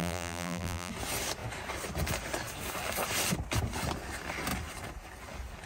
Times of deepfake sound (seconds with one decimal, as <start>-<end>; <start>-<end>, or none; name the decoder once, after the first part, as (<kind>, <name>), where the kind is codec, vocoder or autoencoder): 0.0-0.9 (vocoder, BigVGAN v2)